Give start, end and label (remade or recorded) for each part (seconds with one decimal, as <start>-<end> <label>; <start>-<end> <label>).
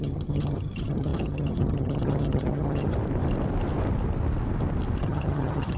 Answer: 0.0-2.9 remade; 2.9-5.0 recorded; 5.0-5.8 remade